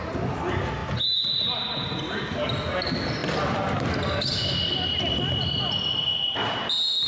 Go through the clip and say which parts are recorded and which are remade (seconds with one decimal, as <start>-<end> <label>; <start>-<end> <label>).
0.0-7.1 recorded